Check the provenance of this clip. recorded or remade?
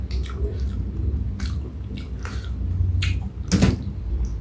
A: recorded